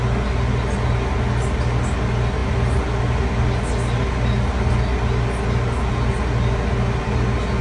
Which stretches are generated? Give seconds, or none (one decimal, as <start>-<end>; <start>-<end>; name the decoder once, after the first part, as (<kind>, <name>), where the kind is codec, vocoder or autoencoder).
none